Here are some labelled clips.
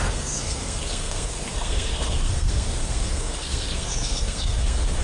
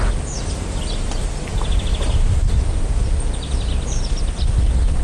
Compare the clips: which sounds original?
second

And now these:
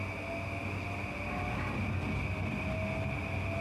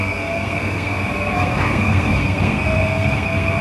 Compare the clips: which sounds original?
first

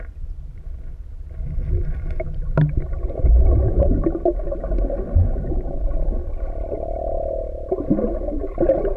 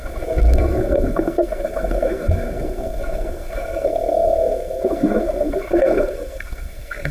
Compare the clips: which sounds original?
first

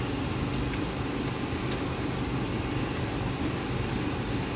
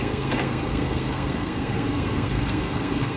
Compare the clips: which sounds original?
first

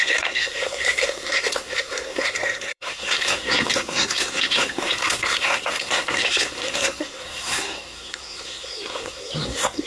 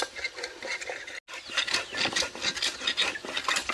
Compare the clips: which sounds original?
second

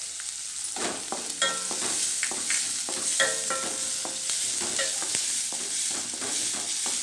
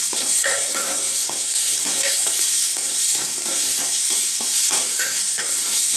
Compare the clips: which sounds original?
first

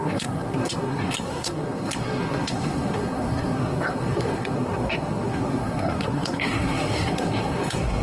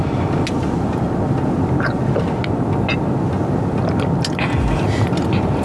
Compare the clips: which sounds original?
second